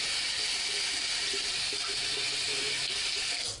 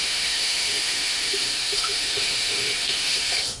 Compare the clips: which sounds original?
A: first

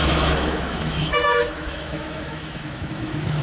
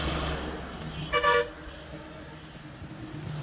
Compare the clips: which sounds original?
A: second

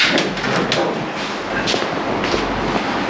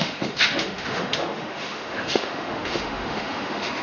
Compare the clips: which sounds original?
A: first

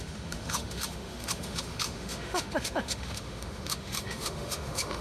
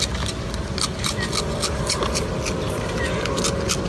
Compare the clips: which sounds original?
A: second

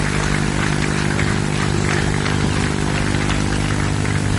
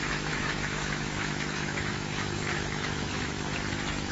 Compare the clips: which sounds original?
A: first